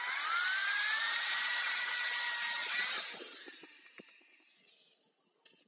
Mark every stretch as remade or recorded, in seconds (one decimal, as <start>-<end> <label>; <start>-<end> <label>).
0.0-0.6 recorded; 0.6-1.9 remade; 1.9-2.6 recorded; 2.6-4.6 remade; 4.6-5.7 recorded